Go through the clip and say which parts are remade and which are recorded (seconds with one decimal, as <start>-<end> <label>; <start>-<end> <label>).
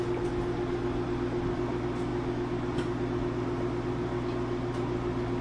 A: 0.0-5.4 recorded